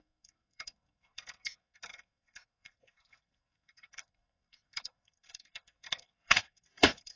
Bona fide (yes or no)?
no